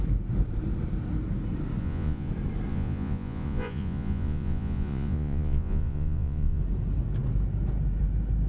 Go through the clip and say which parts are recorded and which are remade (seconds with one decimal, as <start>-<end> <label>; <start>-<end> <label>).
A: 0.0-1.8 recorded; 1.8-2.3 remade; 2.3-2.7 recorded; 2.7-6.6 remade; 6.6-8.5 recorded